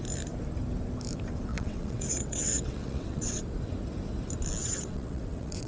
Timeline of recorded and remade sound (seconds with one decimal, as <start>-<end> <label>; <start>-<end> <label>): 0.0-1.5 recorded; 1.5-3.4 remade; 3.4-4.6 recorded; 4.6-5.7 remade